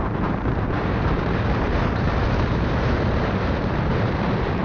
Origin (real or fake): fake